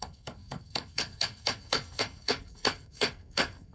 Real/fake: fake